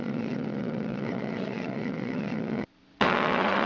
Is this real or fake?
fake